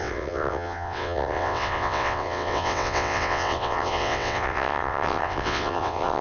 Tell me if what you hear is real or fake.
fake